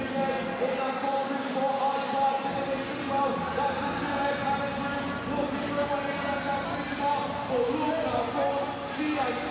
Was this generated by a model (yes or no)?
no